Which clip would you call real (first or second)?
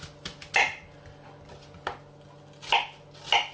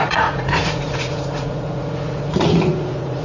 first